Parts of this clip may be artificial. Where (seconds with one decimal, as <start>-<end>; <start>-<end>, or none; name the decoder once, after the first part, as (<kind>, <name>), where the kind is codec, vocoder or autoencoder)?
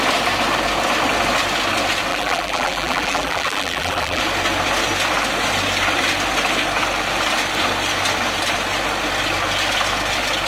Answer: 2.1-4.2 (vocoder, BigVGAN v2)